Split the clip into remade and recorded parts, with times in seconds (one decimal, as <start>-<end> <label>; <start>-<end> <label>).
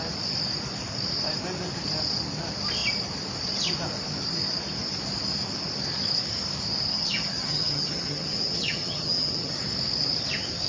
0.0-6.9 recorded; 6.9-9.5 remade; 9.5-10.7 recorded